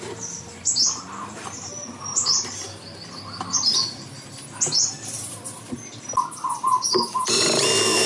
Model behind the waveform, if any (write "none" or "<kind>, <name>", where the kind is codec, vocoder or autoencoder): none